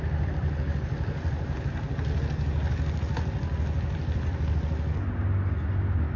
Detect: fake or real real